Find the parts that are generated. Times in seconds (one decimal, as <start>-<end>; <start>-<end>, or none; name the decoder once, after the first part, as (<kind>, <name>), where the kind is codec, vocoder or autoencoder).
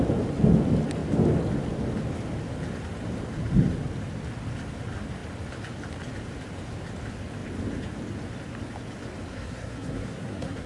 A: 9.3-10.7 (codec, SNAC)